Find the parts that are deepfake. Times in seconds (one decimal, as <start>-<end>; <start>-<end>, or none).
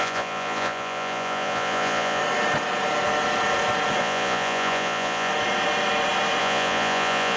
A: 0.0-2.2; 4.0-5.3; 6.4-7.4